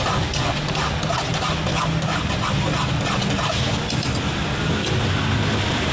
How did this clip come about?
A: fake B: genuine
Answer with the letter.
B